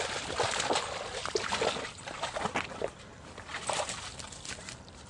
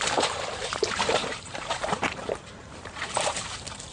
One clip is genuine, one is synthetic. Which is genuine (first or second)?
first